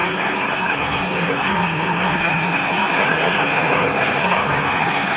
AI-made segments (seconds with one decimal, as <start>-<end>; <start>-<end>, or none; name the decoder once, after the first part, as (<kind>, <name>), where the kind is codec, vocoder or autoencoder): 0.0-5.2 (codec, SNAC)